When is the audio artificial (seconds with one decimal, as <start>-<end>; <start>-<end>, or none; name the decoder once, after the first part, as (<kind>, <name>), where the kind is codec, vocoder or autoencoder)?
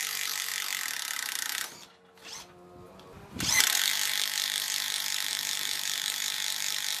0.0-0.5 (vocoder, BigVGAN v2); 3.3-7.0